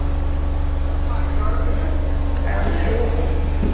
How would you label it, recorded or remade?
recorded